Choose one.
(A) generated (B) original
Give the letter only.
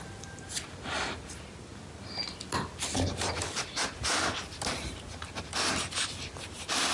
B